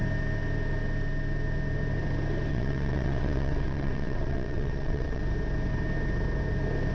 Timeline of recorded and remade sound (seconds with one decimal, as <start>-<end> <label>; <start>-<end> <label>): 0.0-2.5 recorded; 2.5-5.2 remade; 5.2-6.9 recorded